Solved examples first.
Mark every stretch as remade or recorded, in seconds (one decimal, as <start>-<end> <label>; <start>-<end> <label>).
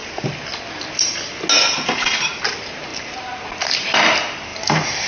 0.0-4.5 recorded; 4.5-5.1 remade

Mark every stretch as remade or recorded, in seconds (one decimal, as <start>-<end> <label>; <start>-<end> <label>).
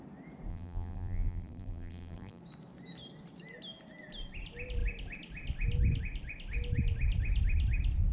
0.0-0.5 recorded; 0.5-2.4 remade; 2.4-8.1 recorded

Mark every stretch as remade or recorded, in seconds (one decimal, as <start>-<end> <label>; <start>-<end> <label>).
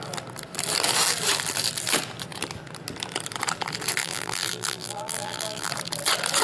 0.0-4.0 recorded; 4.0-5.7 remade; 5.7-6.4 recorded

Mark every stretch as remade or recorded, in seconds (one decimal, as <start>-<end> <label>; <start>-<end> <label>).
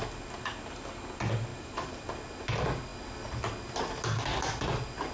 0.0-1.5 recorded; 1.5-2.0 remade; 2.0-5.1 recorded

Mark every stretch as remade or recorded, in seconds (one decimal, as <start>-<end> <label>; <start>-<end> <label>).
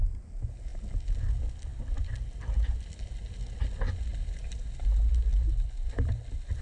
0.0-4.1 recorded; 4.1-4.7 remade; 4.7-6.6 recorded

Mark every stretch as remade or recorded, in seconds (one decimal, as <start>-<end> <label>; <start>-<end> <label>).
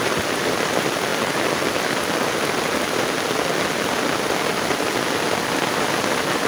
0.0-1.1 remade; 1.1-5.0 recorded; 5.0-6.5 remade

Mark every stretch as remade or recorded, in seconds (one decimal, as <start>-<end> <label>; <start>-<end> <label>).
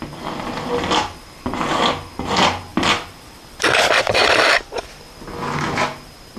0.0-2.7 recorded; 2.7-4.0 remade; 4.0-6.4 recorded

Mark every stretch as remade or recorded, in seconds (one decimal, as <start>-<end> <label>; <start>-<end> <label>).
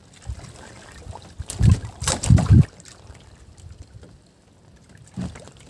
0.0-5.7 recorded